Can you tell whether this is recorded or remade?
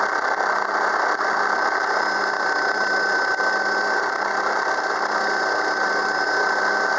recorded